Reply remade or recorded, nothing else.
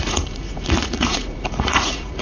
remade